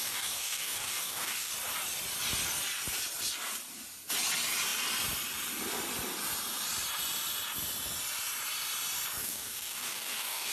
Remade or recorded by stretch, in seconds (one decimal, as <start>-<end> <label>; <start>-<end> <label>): 0.0-1.5 remade; 1.5-9.2 recorded; 9.2-10.5 remade

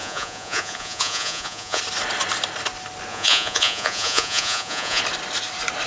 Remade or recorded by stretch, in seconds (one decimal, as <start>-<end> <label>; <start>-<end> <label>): 0.0-1.8 remade; 1.8-3.1 recorded; 3.1-5.0 remade; 5.0-5.9 recorded